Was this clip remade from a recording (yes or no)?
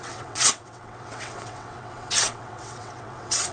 yes